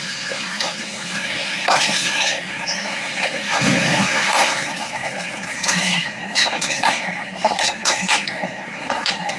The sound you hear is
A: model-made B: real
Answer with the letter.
A